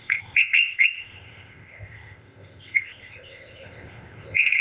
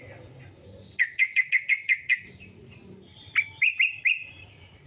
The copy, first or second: first